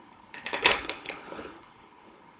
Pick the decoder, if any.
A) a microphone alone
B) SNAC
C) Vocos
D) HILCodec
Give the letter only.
D